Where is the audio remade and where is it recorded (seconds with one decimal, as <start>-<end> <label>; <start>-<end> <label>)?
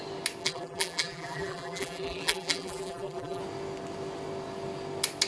0.0-0.4 recorded; 0.4-3.4 remade; 3.4-5.3 recorded